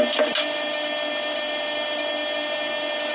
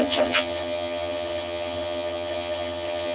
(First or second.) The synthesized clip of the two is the second